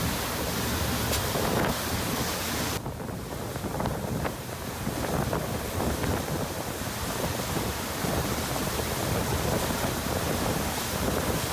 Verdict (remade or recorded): recorded